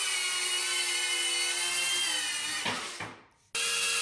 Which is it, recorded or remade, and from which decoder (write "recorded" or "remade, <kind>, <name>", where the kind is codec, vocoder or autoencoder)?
recorded